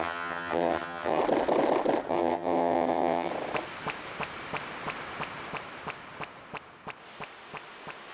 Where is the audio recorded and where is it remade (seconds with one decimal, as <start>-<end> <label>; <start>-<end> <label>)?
0.0-1.2 remade; 1.2-2.1 recorded; 2.1-3.3 remade; 3.3-8.1 recorded